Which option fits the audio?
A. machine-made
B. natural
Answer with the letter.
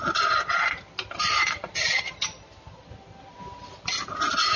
B